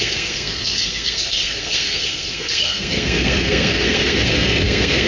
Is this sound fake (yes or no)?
yes